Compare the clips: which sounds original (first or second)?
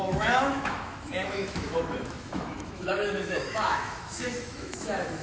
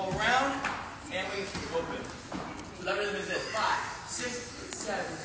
second